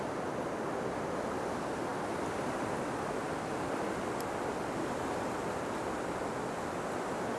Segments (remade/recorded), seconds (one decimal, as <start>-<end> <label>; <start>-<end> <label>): 0.0-7.4 recorded